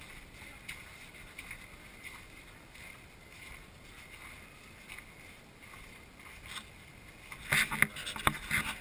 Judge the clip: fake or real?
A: real